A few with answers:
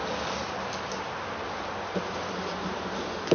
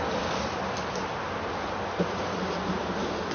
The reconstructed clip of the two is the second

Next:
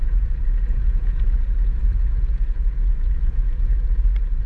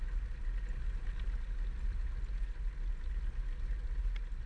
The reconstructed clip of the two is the first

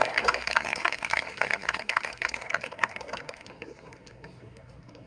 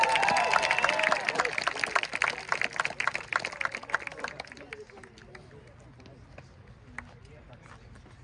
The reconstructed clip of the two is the first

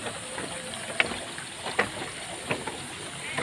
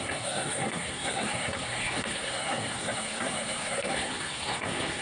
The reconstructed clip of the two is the second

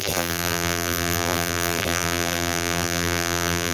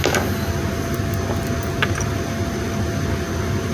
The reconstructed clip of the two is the first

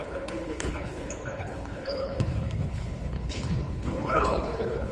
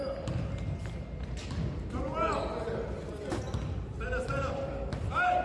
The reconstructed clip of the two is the first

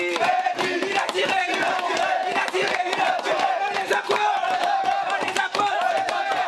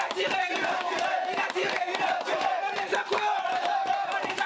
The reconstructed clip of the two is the second